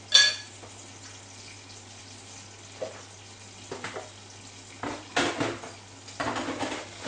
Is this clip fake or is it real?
real